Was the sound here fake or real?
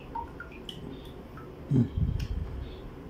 real